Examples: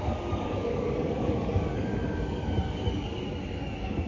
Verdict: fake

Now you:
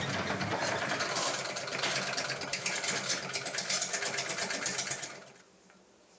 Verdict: real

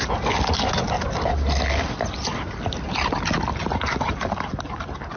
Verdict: real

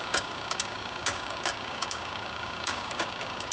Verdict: fake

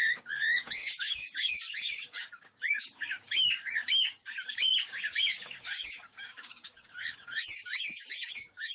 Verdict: fake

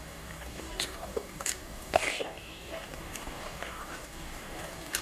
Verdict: fake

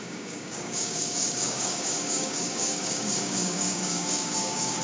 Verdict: fake